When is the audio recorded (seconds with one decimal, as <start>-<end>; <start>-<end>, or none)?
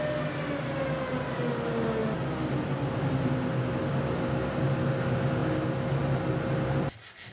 0.0-7.3